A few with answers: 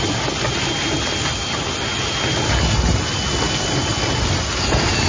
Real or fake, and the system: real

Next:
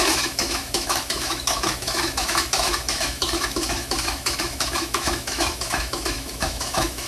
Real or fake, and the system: fake, autoencoder, DAC-VAE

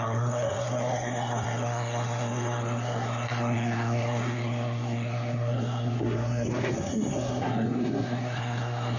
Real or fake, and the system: fake, codec, SNAC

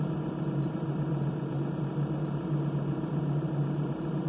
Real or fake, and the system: real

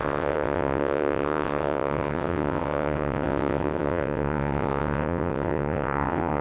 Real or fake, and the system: fake, vocoder, WaveNeXt